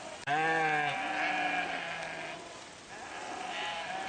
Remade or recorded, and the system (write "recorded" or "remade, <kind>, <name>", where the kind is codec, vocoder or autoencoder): recorded